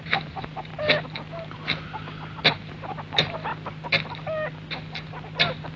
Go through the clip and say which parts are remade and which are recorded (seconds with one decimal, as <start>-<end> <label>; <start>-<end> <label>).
0.0-0.7 remade; 0.7-2.5 recorded; 2.5-3.5 remade; 3.5-5.8 recorded